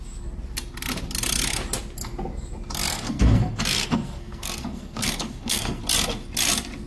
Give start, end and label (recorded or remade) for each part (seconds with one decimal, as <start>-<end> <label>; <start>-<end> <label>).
0.0-2.9 recorded; 2.9-5.8 remade; 5.8-6.9 recorded